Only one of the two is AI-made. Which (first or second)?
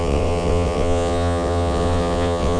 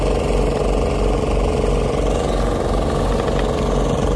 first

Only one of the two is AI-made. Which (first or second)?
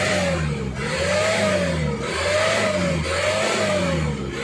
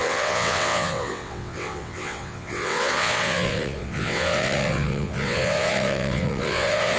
second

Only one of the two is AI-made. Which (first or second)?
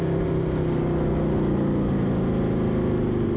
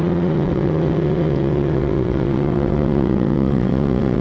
second